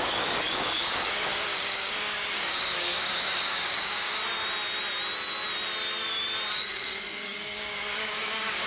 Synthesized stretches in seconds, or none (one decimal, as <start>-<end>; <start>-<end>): 0.0-4.2; 6.5-8.7

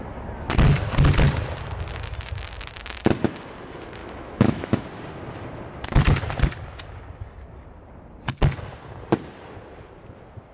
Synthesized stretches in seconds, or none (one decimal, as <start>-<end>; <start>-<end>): 4.0-4.8

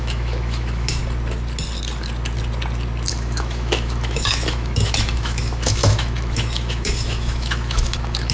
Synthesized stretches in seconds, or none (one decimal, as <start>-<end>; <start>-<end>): 0.0-1.0; 3.1-8.3

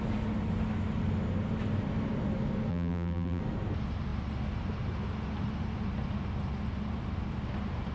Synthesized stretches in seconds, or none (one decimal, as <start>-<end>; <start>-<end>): 2.7-3.4

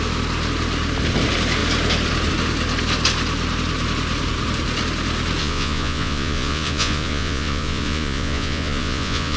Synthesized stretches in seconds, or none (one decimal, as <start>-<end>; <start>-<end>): 5.4-9.4

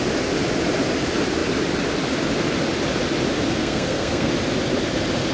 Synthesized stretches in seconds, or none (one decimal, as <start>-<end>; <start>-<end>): 3.6-4.3

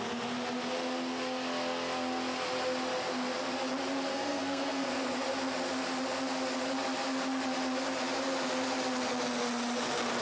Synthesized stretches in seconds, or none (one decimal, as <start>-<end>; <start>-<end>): 4.1-4.9